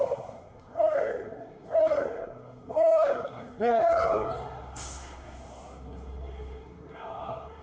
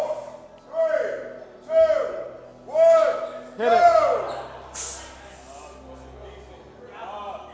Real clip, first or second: second